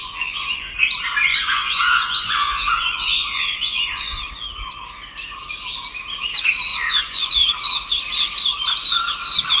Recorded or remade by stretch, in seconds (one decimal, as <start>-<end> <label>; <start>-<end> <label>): 0.0-0.7 remade; 0.7-1.3 recorded; 1.3-4.2 remade; 4.2-6.7 recorded; 6.7-7.3 remade; 7.3-9.6 recorded

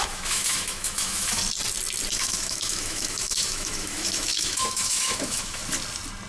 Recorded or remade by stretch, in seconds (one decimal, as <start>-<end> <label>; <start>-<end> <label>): 0.0-1.4 remade; 1.4-2.1 recorded; 2.1-5.6 remade; 5.6-6.3 recorded

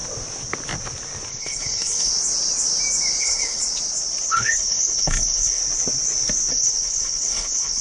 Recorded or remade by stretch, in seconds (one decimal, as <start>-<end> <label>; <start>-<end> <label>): 0.0-1.3 recorded; 1.3-2.1 remade; 2.1-3.2 recorded; 3.2-3.6 remade; 3.6-4.3 recorded; 4.3-5.6 remade; 5.6-6.5 recorded; 6.5-7.8 remade

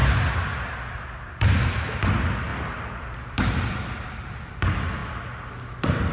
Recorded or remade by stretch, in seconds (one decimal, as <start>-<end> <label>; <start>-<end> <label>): 0.0-6.1 recorded

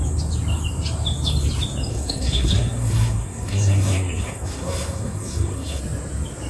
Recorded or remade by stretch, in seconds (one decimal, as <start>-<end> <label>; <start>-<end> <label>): 0.0-1.9 recorded; 1.9-5.8 remade; 5.8-6.5 recorded

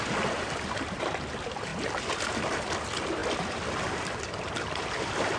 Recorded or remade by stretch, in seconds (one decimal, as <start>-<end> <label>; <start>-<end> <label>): 0.0-1.7 remade; 1.7-2.3 recorded; 2.3-5.4 remade

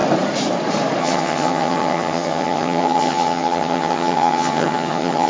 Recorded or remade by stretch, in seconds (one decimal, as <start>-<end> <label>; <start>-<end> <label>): 0.0-1.0 recorded; 1.0-5.3 remade

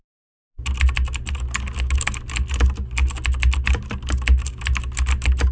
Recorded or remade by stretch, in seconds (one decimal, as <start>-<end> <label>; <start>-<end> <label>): 0.0-5.5 recorded